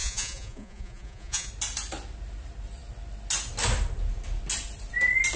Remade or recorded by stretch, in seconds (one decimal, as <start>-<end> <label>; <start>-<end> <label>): 0.0-1.5 remade; 1.5-5.4 recorded